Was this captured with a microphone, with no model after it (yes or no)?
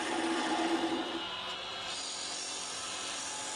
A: no